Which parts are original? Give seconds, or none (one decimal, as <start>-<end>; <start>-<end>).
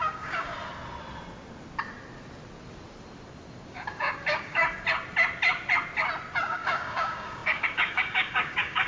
0.5-3.7; 4.6-6.4